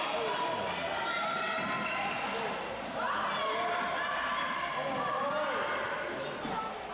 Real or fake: real